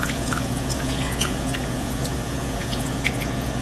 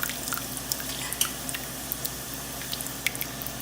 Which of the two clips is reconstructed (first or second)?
first